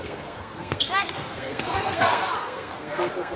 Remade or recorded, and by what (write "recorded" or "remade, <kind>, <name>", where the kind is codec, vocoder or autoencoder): remade, codec, SNAC